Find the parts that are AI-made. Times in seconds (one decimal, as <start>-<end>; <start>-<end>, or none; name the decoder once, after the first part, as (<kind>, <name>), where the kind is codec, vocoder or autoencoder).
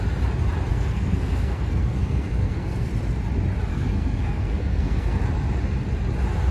0.7-2.9 (codec, SNAC); 3.7-5.2